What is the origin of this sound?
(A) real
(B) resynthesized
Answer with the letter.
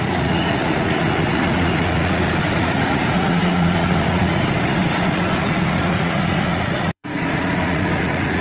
B